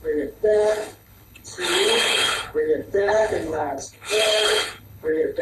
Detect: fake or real fake